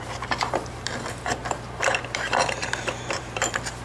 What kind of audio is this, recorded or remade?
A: remade